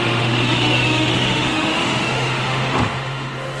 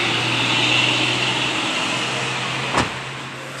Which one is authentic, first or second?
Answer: second